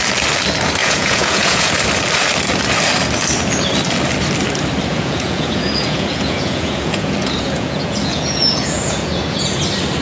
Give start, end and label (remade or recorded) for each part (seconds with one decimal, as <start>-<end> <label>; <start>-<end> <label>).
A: 0.0-0.8 recorded; 0.8-1.7 remade; 1.7-4.9 recorded; 4.9-9.6 remade; 9.6-10.0 recorded